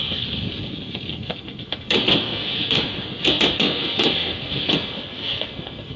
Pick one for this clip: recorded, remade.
remade